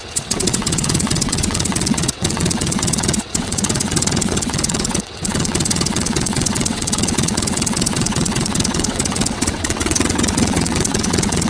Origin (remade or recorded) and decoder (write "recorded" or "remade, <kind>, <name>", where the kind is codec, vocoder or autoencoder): remade, vocoder, WaveNeXt